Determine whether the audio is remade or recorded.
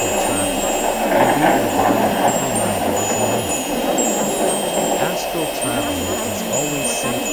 recorded